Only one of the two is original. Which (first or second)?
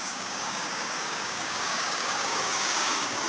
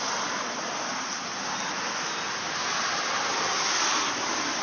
second